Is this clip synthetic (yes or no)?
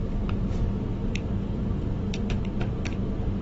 yes